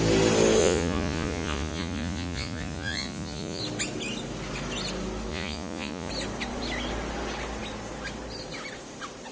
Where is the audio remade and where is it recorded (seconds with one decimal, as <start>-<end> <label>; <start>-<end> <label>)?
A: 0.0-0.6 recorded; 0.6-3.6 remade; 3.6-5.3 recorded; 5.3-6.1 remade; 6.1-9.3 recorded